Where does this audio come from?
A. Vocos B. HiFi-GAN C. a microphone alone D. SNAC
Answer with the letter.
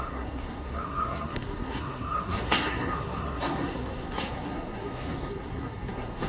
D